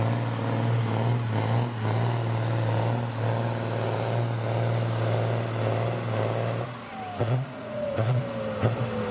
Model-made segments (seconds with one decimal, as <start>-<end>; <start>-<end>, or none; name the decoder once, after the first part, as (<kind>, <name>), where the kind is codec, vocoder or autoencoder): 7.2-8.2 (vocoder, Vocos)